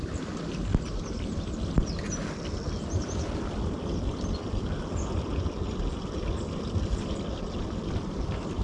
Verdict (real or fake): real